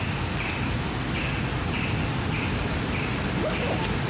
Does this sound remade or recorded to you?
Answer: recorded